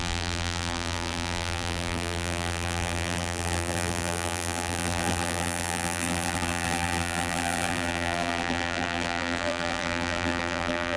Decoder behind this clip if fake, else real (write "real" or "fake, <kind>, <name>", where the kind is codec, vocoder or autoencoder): fake, vocoder, BigVGAN v2